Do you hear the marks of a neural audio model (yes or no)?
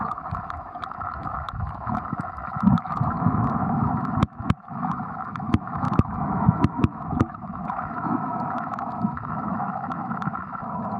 yes